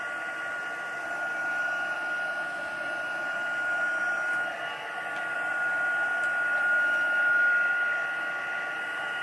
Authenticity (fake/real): fake